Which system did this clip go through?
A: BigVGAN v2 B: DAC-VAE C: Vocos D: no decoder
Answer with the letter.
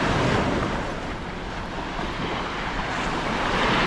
D